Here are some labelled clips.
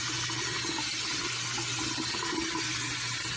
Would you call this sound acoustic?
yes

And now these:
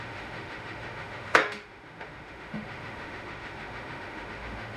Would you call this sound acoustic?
no